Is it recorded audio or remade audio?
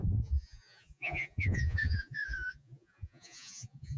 remade